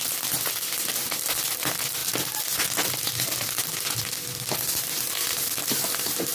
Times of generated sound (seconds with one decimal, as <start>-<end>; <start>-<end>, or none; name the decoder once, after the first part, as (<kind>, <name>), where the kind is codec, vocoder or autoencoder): none